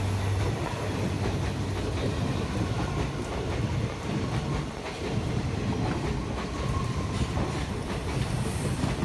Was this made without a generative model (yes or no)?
yes